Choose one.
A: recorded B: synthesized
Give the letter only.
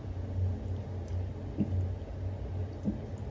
A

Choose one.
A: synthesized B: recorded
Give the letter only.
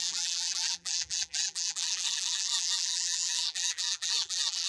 A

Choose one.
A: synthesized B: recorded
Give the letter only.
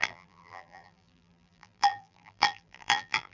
A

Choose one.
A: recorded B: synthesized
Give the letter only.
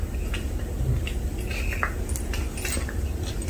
A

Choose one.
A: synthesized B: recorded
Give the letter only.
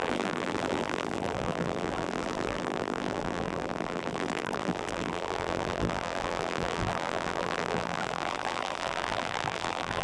A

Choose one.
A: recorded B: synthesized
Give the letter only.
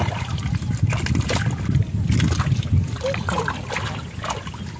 A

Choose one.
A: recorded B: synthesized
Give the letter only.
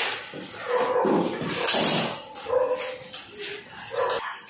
A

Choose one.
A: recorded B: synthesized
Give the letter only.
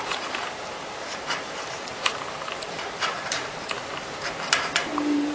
B